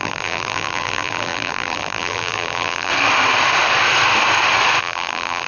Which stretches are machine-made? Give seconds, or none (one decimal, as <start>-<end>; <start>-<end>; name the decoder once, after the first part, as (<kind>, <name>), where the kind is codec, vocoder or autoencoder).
0.0-2.9 (vocoder, BigVGAN v2); 4.8-5.5